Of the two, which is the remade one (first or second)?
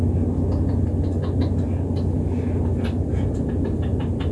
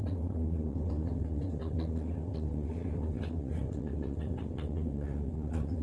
second